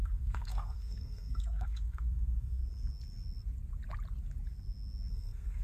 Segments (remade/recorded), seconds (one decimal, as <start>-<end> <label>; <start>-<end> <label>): 0.0-2.6 remade; 2.6-5.1 recorded; 5.1-5.6 remade